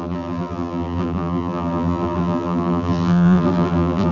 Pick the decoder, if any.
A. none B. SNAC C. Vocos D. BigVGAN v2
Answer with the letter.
D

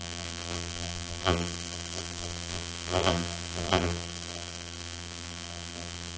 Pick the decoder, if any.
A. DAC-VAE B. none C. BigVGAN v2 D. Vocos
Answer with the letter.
C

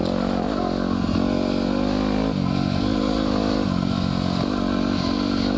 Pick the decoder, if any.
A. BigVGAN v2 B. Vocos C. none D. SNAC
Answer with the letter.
C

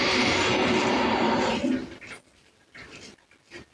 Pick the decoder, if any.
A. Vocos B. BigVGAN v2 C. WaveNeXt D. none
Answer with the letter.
B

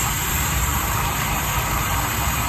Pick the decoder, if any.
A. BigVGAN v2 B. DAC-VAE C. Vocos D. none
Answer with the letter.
A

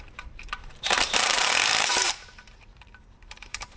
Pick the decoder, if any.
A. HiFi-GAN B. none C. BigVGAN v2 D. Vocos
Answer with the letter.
C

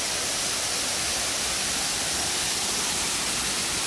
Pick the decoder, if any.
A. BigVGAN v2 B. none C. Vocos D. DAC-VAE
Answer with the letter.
A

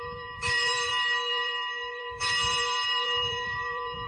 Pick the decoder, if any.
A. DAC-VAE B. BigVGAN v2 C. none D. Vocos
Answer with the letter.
B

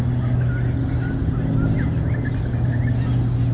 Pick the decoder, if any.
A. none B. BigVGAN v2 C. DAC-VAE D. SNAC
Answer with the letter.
A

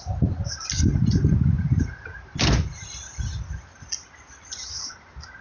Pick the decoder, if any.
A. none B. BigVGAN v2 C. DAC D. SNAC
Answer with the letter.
A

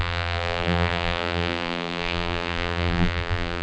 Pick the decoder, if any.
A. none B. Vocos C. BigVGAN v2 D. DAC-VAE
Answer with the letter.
C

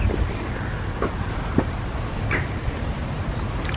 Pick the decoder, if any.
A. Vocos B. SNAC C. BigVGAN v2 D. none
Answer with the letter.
C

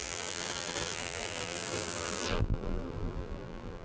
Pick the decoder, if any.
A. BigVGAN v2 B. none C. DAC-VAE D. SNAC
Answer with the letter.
A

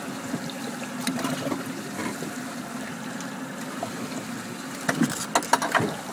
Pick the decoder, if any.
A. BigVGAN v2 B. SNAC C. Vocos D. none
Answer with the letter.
D